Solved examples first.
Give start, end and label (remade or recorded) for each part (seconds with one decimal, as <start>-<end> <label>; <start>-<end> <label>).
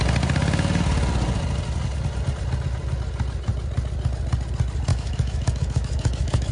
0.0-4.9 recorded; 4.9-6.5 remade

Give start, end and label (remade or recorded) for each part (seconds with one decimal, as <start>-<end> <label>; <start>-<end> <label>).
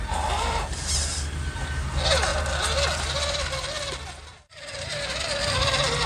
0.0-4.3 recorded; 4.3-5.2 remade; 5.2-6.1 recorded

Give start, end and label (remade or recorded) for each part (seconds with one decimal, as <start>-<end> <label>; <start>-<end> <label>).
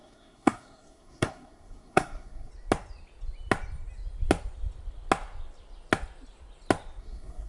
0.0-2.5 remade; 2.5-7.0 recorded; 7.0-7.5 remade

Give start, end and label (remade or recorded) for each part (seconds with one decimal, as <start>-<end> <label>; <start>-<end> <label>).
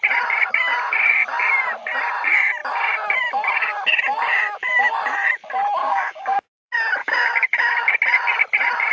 0.0-5.8 recorded; 5.8-6.6 remade; 6.6-7.0 recorded; 7.0-8.0 remade; 8.0-8.9 recorded